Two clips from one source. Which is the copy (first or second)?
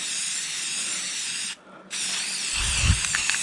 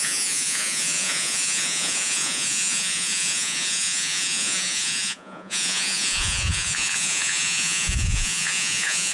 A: second